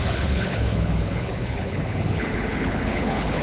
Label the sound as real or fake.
fake